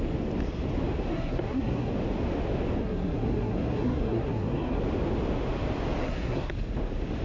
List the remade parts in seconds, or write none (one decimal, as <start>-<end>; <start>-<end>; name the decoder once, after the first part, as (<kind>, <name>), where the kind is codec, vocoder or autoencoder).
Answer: 1.1-1.9 (codec, SNAC); 2.8-4.8; 6.0-6.5